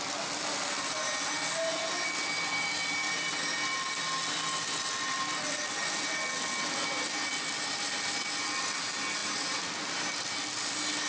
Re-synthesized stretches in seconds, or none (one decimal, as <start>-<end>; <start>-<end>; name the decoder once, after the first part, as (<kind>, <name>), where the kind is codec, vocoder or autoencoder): none